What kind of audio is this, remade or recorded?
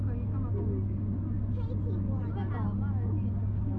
recorded